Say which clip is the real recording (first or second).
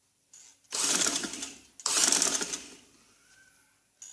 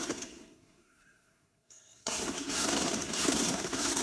first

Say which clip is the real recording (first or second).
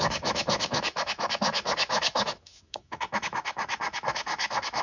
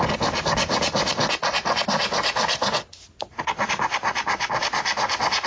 second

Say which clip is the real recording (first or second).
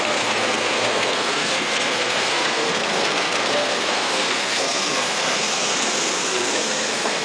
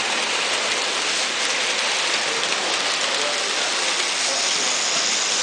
second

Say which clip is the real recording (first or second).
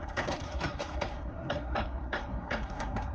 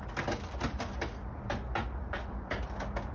second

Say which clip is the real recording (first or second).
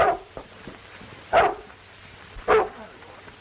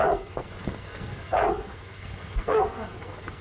first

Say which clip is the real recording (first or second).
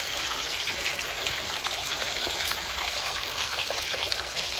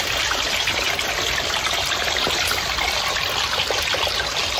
second